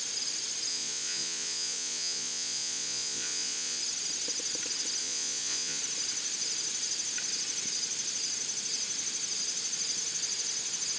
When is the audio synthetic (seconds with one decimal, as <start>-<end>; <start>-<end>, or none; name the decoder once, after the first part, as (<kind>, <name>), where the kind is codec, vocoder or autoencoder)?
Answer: 0.7-3.8 (vocoder, Vocos); 5.0-5.8